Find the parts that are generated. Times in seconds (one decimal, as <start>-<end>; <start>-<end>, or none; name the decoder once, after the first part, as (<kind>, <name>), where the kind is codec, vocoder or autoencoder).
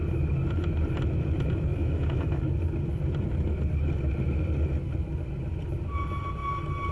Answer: 1.7-2.4 (autoencoder, DAC-VAE)